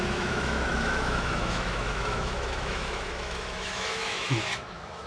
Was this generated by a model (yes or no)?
yes